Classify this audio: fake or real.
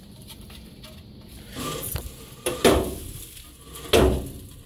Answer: real